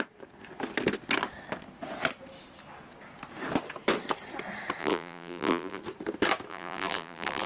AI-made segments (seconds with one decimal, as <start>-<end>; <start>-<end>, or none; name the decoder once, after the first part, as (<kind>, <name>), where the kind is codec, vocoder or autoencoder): 4.8-5.8 (vocoder, BigVGAN v2); 6.5-7.5